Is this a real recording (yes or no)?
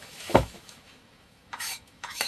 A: no